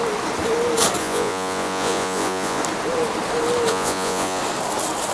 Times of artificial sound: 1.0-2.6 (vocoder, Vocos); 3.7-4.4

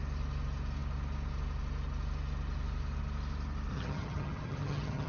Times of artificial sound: 3.7-5.1 (vocoder, HiFi-GAN)

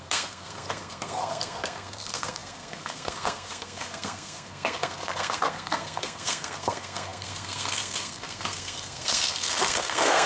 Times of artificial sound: 0.0-10.3 (codec, SNAC)

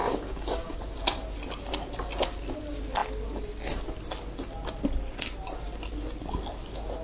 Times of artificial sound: 0.0-0.8 (codec, DAC)

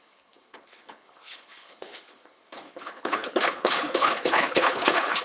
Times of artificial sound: 0.0-5.2 (codec, HILCodec)

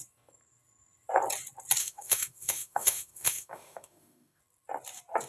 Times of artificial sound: 1.8-4.4 (autoencoder, DAC-VAE)